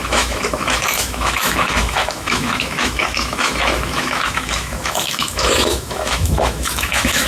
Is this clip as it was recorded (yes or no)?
no